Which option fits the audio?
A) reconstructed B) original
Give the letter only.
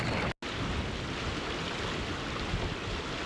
B